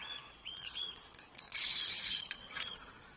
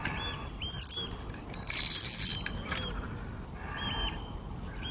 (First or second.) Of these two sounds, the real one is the second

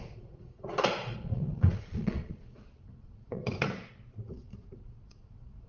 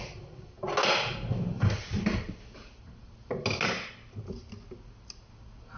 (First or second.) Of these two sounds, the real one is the second